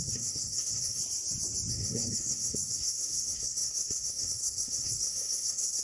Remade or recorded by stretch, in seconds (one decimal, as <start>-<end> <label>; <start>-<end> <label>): 0.0-1.0 remade; 1.0-1.7 recorded; 1.7-5.8 remade